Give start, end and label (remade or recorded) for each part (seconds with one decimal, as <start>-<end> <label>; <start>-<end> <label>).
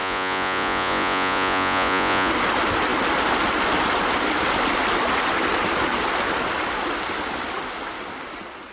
0.0-2.3 remade; 2.3-8.7 recorded